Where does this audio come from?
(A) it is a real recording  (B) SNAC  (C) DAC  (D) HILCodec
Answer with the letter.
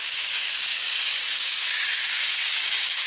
C